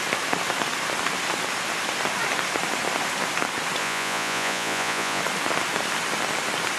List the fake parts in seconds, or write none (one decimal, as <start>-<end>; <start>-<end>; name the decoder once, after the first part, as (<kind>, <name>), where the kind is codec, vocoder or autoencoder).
3.8-5.2 (vocoder, Vocos)